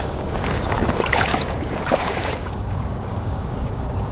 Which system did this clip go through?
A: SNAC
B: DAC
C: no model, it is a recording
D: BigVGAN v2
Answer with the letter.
B